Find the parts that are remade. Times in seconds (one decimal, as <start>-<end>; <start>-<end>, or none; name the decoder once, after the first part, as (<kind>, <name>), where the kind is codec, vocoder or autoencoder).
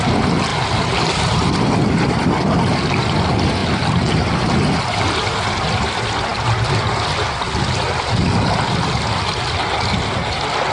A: 0.5-2.3 (vocoder, BigVGAN v2); 6.3-7.4